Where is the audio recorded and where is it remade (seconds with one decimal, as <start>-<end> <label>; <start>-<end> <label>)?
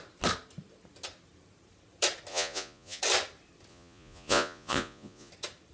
0.0-2.3 recorded; 2.3-3.0 remade; 3.0-3.7 recorded; 3.7-5.3 remade; 5.3-5.7 recorded